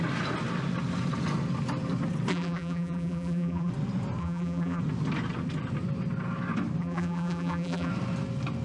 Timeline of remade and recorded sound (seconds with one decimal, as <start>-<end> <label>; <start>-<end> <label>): 0.0-2.3 recorded; 2.3-3.7 remade; 3.7-4.2 recorded; 4.2-4.8 remade; 4.8-6.8 recorded; 6.8-7.9 remade; 7.9-8.6 recorded